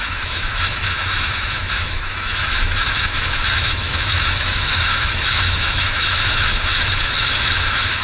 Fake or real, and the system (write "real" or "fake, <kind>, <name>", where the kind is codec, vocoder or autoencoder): fake, autoencoder, DAC-VAE